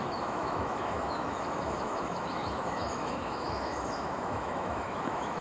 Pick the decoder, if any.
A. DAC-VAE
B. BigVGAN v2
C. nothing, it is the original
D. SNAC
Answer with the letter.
A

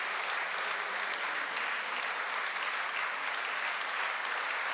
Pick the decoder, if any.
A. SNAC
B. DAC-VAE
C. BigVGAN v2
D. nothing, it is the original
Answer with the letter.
D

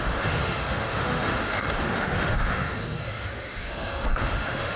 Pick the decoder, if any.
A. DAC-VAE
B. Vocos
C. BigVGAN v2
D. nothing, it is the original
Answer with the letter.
A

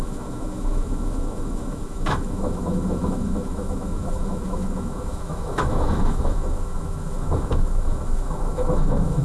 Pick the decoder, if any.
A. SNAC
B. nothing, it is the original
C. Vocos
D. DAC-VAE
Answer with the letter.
D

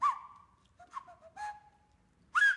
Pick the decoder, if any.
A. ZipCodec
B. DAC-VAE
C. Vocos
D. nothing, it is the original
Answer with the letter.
D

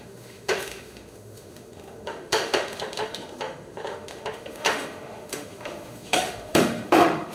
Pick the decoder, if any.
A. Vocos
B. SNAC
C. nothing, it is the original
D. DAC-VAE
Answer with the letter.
D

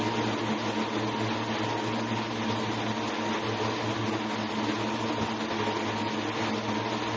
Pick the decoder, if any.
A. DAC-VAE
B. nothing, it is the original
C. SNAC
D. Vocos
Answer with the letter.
B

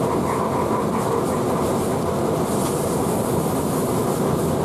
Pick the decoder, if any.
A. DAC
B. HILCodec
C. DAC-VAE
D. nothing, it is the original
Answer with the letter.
D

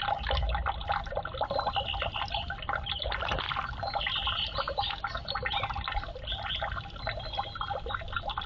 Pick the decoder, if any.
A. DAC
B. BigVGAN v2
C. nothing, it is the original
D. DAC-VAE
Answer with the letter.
C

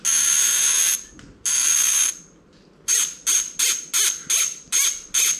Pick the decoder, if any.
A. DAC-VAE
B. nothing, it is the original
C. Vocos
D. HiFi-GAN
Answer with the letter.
B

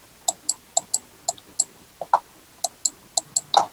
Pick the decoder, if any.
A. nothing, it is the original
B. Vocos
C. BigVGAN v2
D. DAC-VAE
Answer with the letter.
A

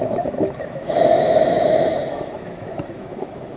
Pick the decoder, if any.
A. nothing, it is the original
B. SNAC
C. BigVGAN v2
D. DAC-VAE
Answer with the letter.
D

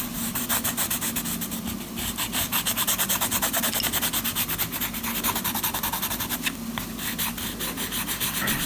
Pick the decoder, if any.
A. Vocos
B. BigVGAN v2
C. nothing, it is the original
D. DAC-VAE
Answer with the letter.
C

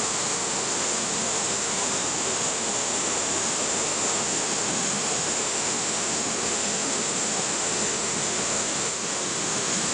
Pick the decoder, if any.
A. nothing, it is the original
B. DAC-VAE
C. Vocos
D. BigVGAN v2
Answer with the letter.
B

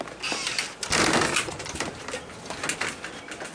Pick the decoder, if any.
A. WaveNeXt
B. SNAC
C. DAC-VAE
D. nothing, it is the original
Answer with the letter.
D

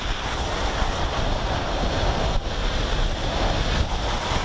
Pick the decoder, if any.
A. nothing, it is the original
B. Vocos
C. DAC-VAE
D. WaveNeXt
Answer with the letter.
A